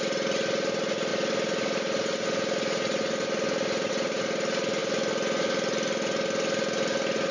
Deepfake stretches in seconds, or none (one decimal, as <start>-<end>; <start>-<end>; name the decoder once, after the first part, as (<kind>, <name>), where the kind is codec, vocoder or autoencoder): none